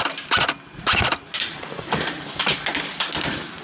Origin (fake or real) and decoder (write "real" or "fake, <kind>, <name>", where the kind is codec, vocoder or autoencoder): real